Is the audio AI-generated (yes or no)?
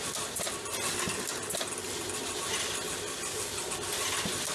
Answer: no